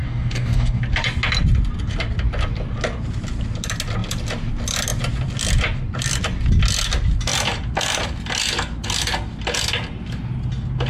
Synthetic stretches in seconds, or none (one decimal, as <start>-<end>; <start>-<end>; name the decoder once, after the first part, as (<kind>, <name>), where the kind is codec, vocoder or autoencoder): 0.0-0.8 (codec, DAC)